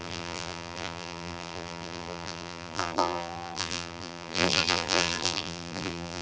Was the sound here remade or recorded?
remade